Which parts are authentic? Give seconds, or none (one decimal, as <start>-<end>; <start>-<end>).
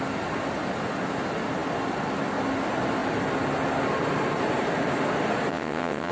0.0-5.5